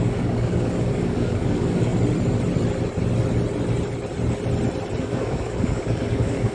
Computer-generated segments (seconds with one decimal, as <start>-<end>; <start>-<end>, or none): 0.0-1.9; 5.0-6.5